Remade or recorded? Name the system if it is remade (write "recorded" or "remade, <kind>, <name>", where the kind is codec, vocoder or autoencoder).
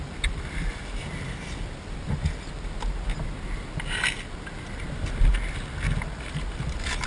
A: recorded